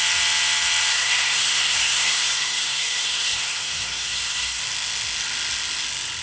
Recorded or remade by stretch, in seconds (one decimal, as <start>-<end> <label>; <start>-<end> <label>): 0.0-0.9 recorded; 0.9-4.6 remade; 4.6-6.2 recorded